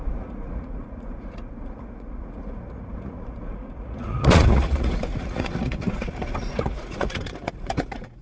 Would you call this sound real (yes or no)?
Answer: no